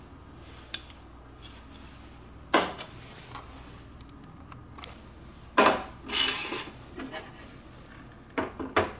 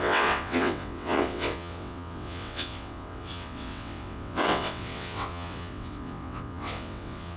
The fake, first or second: second